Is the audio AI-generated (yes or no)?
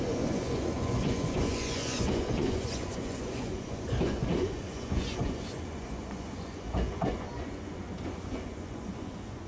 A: yes